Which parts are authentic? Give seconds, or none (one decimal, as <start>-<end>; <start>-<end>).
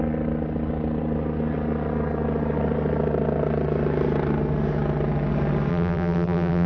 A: 0.0-5.7